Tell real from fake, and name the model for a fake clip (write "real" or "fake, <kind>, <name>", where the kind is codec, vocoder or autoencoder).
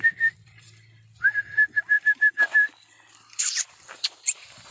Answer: fake, vocoder, BigVGAN v2